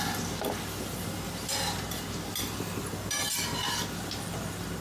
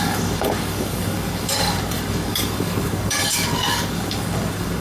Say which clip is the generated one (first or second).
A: second